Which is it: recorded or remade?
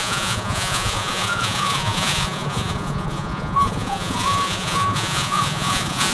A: remade